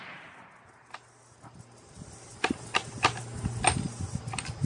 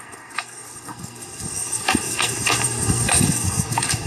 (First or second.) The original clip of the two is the first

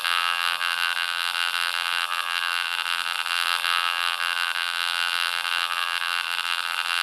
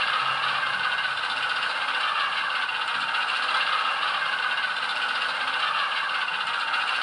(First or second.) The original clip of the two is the second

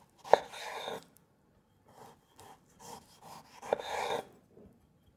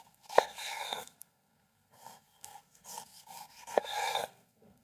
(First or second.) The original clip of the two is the first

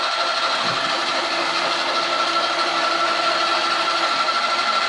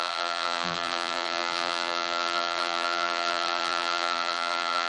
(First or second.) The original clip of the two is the first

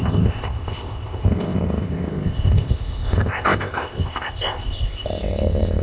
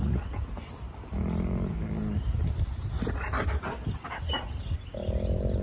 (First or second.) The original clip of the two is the second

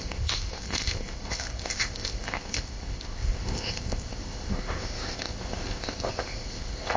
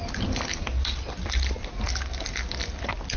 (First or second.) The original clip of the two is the second